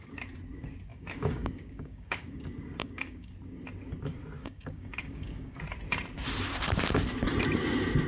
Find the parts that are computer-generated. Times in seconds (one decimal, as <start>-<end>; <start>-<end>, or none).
0.9-2.4; 2.8-3.3; 4.4-5.6